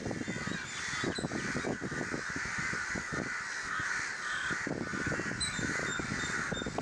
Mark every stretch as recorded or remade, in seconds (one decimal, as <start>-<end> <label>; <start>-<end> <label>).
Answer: 0.0-6.8 recorded